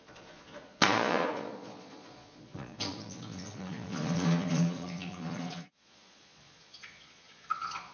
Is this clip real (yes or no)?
no